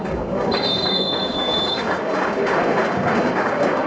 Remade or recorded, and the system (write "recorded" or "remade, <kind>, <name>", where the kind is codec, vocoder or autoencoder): remade, codec, DAC